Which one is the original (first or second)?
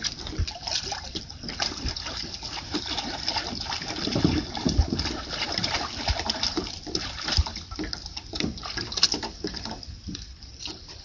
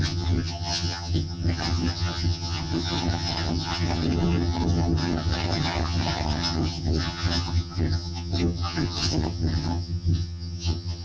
first